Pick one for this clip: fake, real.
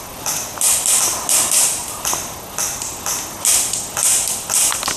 real